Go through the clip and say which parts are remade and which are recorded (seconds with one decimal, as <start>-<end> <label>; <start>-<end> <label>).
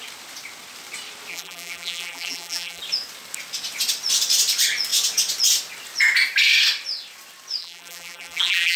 0.0-1.3 recorded; 1.3-2.8 remade; 2.8-7.6 recorded; 7.6-8.8 remade